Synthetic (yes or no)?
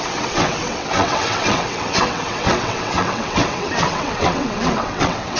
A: yes